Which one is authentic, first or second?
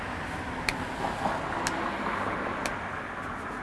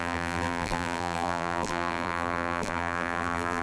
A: first